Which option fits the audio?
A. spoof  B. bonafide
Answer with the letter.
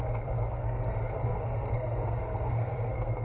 A